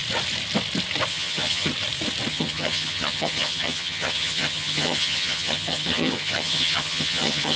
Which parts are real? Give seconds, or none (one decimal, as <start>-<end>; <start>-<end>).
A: 0.0-1.1; 1.7-2.3